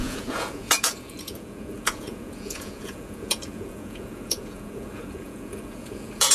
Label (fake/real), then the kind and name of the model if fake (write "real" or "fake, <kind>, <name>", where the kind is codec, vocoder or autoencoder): fake, vocoder, Vocos